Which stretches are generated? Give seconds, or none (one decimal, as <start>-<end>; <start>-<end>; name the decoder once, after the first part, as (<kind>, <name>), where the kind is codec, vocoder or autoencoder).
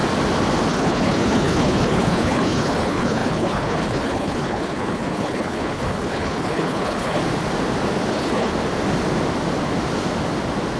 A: 0.7-7.2 (codec, HILCodec); 8.1-8.5